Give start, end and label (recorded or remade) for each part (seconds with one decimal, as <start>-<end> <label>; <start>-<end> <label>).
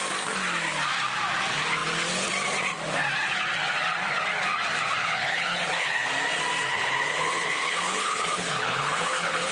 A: 0.0-5.0 recorded; 5.0-6.1 remade; 6.1-6.7 recorded; 6.7-9.5 remade